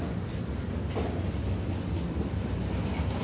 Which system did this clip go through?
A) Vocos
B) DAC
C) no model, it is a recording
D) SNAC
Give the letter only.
C